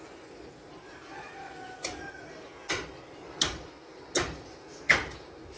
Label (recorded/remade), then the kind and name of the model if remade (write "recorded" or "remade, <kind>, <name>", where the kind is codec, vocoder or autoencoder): recorded